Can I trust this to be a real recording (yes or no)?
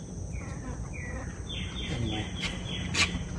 yes